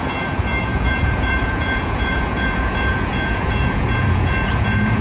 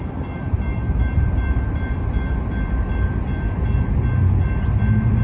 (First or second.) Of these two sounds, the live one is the second